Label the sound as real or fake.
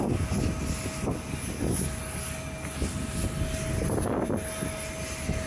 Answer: real